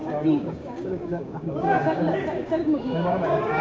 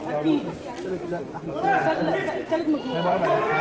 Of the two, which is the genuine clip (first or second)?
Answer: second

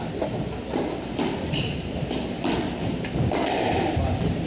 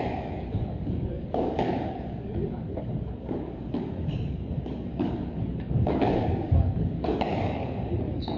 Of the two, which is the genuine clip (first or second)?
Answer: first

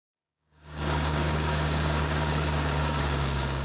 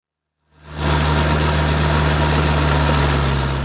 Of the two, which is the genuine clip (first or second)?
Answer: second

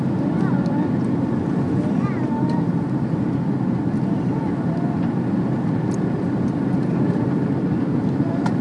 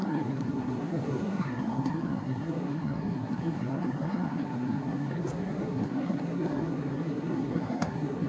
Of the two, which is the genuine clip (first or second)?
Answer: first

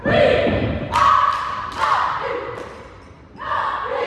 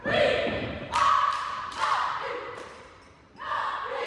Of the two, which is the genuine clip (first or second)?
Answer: first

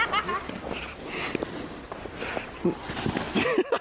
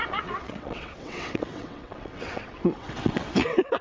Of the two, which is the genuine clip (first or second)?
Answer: first